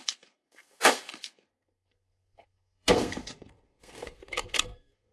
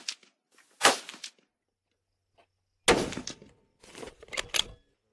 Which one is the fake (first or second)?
first